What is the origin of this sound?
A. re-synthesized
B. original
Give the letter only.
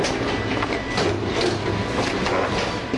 B